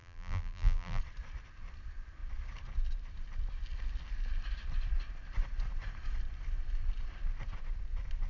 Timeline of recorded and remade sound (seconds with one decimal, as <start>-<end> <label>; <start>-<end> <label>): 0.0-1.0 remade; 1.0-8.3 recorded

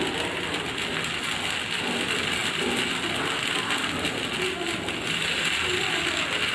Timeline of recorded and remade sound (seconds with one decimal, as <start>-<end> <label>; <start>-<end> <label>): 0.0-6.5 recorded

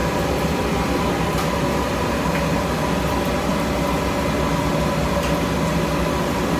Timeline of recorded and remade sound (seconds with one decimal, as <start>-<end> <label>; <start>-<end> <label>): 0.0-0.9 remade; 0.9-6.6 recorded

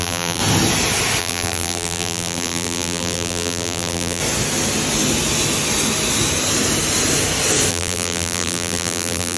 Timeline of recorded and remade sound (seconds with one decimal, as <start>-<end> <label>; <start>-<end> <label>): 0.0-0.4 remade; 0.4-1.2 recorded; 1.2-4.2 remade; 4.2-7.7 recorded; 7.7-9.4 remade

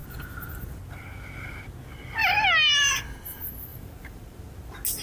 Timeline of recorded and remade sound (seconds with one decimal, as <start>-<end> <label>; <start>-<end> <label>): 0.0-3.7 recorded; 3.7-4.4 remade; 4.4-5.0 recorded

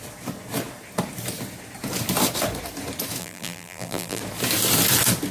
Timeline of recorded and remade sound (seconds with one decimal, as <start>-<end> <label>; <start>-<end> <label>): 0.0-3.2 recorded; 3.2-4.2 remade; 4.2-5.3 recorded

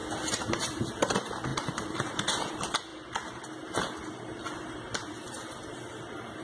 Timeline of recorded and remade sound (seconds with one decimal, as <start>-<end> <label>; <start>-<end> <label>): 0.0-0.5 recorded; 0.5-2.9 remade; 2.9-3.9 recorded; 3.9-6.4 remade